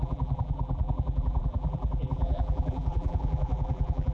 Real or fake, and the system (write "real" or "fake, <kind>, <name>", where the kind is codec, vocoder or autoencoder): fake, vocoder, BigVGAN v2